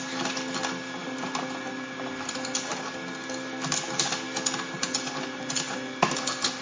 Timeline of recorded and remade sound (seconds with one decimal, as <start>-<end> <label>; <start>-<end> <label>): 0.0-6.6 recorded